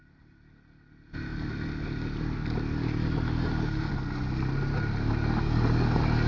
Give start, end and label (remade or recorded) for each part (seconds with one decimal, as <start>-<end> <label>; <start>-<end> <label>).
0.0-6.3 recorded